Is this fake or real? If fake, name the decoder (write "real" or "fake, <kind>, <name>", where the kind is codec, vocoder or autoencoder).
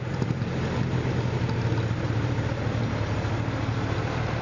real